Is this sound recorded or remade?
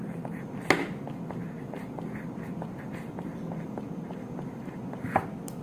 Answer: recorded